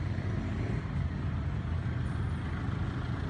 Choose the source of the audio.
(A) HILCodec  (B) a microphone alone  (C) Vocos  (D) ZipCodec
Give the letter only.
B